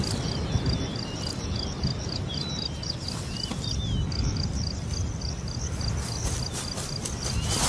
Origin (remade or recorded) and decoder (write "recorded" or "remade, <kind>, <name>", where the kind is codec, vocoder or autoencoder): recorded